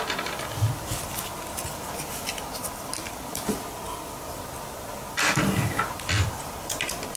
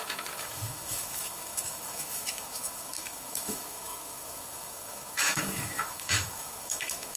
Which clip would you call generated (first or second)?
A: second